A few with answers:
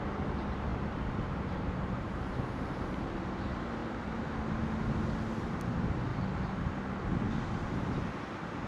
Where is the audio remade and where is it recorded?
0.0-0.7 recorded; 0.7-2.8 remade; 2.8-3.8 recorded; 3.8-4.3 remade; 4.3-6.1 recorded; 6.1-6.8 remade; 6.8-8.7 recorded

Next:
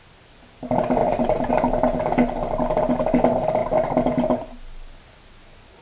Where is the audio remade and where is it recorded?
0.0-1.0 recorded; 1.0-1.5 remade; 1.5-5.8 recorded

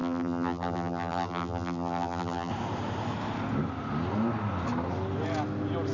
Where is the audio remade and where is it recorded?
0.0-2.5 remade; 2.5-5.9 recorded

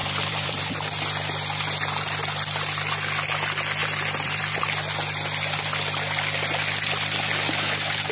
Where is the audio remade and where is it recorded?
0.0-0.6 remade; 0.6-3.8 recorded; 3.8-4.6 remade; 4.6-8.1 recorded